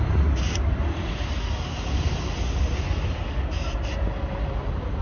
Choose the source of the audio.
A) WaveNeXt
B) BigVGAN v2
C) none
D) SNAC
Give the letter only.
C